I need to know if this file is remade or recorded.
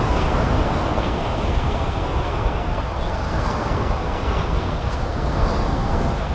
remade